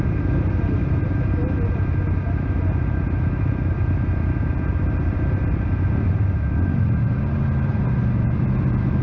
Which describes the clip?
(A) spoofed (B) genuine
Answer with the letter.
B